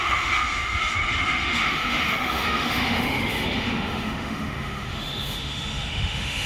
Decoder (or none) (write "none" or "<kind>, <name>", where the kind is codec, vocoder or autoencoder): autoencoder, DAC-VAE